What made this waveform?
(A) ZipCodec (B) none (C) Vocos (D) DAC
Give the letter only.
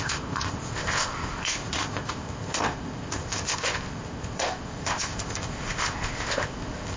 A